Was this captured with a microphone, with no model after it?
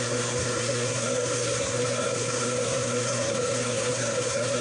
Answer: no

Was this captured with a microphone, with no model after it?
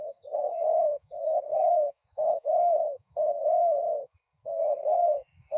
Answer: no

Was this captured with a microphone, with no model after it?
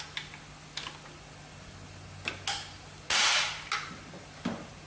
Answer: yes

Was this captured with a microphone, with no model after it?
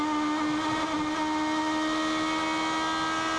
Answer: yes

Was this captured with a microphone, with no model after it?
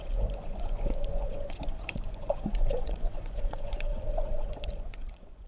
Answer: no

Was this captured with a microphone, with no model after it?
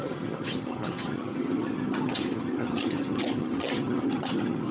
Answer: no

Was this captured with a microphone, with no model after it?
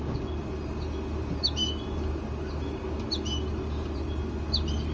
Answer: yes